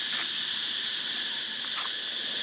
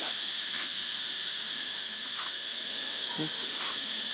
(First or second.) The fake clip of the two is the second